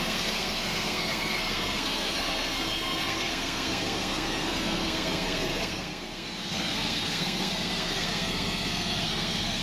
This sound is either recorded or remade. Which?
remade